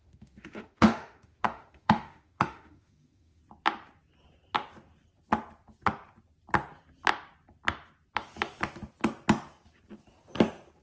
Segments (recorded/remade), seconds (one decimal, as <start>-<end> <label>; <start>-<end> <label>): 0.0-3.4 remade; 3.4-10.8 recorded